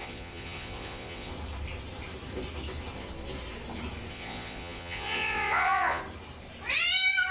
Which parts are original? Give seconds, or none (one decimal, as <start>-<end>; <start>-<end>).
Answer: 1.3-4.1; 6.0-7.3